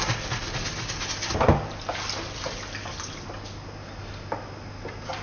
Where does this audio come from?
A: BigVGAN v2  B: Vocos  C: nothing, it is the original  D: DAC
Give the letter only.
C